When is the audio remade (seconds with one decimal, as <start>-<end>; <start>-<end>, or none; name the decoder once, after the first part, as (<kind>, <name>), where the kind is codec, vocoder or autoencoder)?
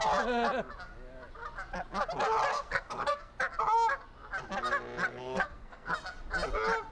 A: 2.5-3.3 (codec, SNAC); 5.1-5.9